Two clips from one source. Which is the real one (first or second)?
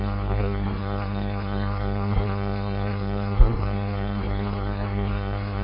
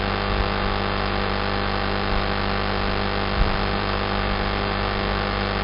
second